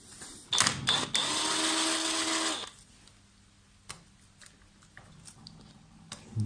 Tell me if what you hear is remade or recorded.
recorded